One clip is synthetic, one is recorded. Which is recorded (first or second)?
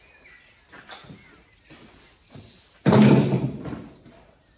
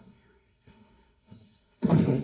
first